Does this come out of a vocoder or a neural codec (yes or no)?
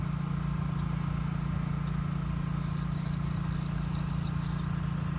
no